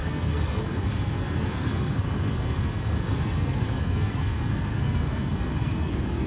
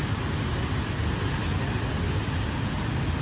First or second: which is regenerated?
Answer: first